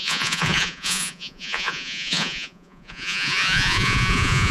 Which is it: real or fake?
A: fake